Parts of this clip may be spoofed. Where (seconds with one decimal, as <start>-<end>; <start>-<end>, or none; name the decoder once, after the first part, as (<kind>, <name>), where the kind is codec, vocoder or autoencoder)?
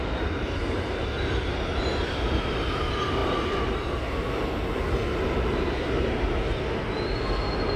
0.0-7.8 (vocoder, BigVGAN v2)